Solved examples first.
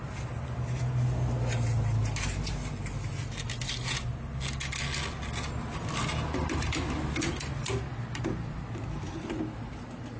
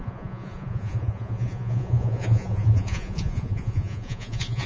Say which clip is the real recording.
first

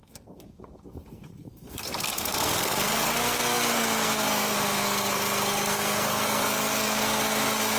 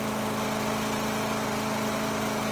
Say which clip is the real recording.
second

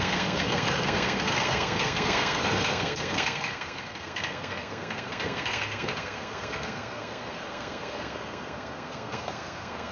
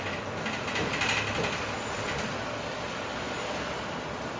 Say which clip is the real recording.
second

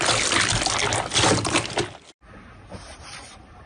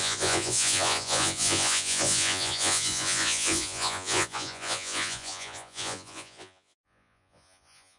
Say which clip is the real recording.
first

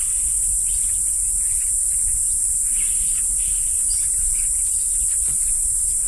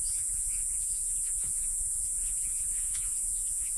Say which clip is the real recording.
first